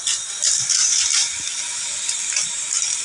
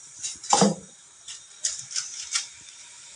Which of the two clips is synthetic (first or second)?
second